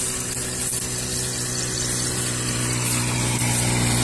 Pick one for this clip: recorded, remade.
recorded